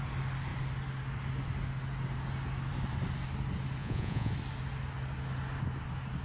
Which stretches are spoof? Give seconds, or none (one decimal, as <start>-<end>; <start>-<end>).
3.8-4.3